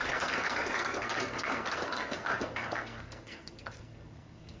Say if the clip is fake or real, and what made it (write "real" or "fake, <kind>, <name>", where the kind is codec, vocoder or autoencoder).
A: fake, codec, SNAC